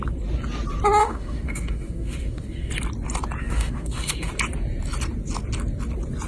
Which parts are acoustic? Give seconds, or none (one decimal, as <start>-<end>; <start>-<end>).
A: 0.0-1.0; 2.7-3.4; 4.3-6.3